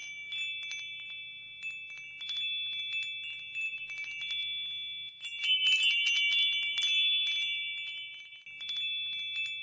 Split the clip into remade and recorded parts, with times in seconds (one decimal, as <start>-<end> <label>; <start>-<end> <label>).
0.0-9.6 recorded